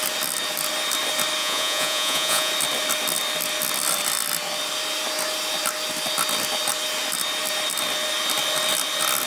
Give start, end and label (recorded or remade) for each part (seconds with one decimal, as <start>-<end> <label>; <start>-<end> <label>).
0.0-1.4 recorded; 1.4-2.5 remade; 2.5-9.3 recorded